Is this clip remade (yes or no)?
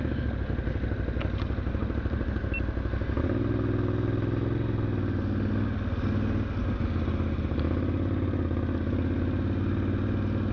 no